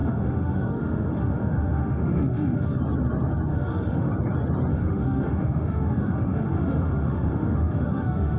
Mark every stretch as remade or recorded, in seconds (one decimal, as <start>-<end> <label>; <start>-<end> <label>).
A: 0.0-2.8 remade; 2.8-3.5 recorded; 3.5-4.1 remade; 4.1-4.7 recorded; 4.7-8.4 remade